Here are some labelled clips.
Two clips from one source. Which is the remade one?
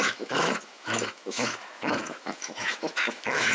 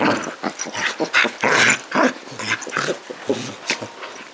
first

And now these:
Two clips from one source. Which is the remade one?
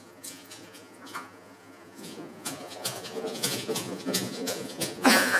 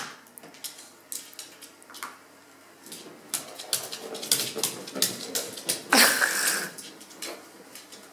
first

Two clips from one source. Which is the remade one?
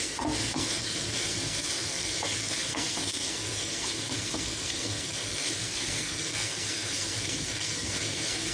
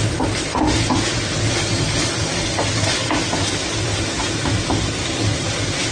first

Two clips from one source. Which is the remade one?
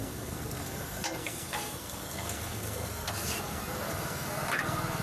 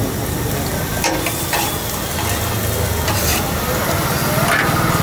first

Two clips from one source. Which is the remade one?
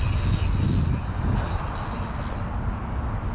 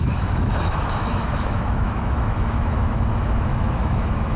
second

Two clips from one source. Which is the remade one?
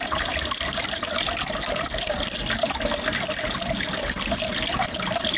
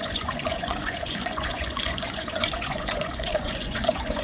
second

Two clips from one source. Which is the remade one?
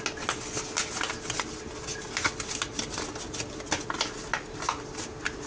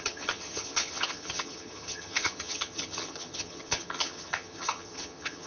second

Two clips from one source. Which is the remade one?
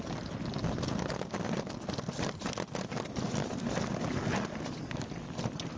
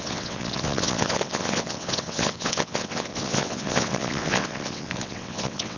second